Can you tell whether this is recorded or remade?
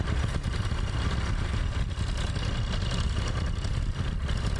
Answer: recorded